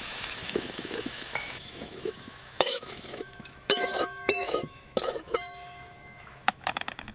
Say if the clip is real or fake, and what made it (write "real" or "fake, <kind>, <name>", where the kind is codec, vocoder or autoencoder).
fake, autoencoder, DAC-VAE